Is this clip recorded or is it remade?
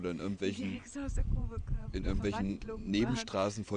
remade